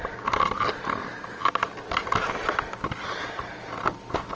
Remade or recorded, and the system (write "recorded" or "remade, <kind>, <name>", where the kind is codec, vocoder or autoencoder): recorded